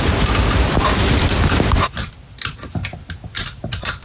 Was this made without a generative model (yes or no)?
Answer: yes